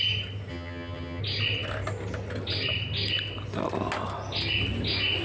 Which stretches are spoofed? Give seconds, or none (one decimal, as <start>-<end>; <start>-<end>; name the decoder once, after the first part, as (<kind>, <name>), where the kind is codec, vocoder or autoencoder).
0.5-1.2 (vocoder, HiFi-GAN)